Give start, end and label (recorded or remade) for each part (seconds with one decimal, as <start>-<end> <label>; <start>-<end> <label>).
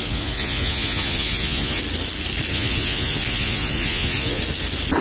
0.0-1.8 remade; 1.8-2.5 recorded; 2.5-4.4 remade; 4.4-5.0 recorded